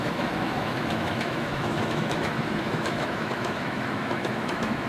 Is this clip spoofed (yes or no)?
yes